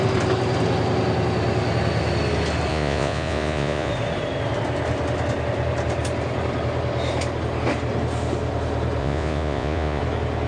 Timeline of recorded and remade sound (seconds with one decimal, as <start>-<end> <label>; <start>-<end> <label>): 0.0-2.7 recorded; 2.7-3.9 remade; 3.9-9.0 recorded; 9.0-10.0 remade; 10.0-10.5 recorded